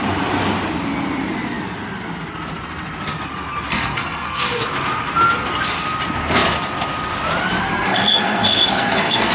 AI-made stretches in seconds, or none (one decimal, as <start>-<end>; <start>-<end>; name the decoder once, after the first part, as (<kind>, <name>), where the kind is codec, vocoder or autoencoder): 3.7-4.4 (codec, SNAC); 7.7-9.3

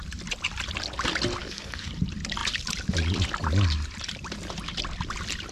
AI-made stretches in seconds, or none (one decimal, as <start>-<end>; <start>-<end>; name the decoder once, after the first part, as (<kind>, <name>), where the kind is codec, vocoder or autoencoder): 1.4-1.9 (codec, SNAC)

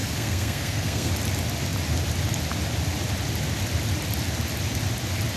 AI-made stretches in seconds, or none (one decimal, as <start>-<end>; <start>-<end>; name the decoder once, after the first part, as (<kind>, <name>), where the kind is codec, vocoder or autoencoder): 0.0-1.1 (codec, SNAC)

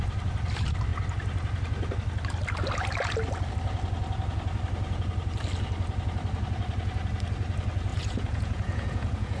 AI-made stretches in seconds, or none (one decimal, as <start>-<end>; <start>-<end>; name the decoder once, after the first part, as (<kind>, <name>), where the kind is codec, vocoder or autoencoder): 7.9-9.4 (vocoder, Vocos)

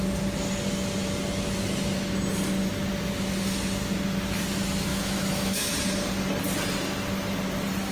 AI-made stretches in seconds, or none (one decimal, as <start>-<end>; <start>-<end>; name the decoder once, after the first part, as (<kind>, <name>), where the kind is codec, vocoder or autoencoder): 4.9-5.6 (autoencoder, DAC-VAE)

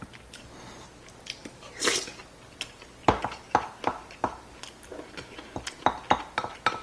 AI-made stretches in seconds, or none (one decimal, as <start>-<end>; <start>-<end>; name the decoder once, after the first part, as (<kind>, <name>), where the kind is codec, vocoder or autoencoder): 1.4-2.2 (vocoder, BigVGAN v2); 3.0-3.5

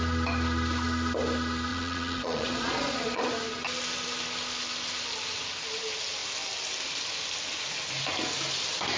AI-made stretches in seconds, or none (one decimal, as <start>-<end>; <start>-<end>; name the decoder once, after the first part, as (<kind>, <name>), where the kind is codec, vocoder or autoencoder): 1.7-3.3 (vocoder, Vocos)